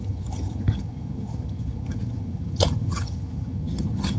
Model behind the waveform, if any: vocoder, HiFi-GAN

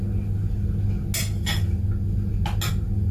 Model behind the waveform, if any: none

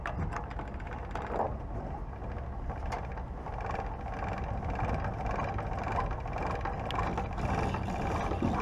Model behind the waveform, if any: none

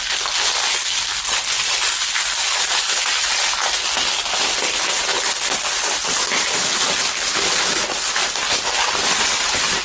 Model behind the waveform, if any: none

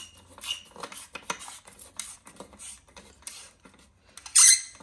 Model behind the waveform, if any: none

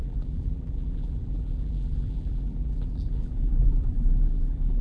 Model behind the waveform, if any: vocoder, BigVGAN v2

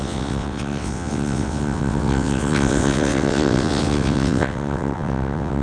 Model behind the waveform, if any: vocoder, WaveNeXt